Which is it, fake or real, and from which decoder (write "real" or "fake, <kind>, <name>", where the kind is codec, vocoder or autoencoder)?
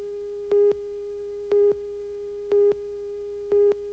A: fake, autoencoder, DAC-VAE